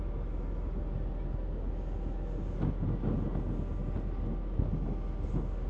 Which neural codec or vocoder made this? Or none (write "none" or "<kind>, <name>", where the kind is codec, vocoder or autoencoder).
none